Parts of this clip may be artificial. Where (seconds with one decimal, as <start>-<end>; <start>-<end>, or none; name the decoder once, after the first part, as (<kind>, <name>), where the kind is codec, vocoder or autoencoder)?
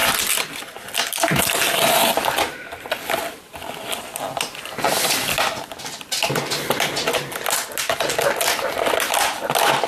none